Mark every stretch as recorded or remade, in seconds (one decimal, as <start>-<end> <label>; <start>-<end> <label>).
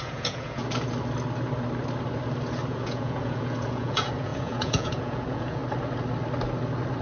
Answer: 0.0-0.6 remade; 0.6-2.7 recorded; 2.7-5.6 remade; 5.6-7.0 recorded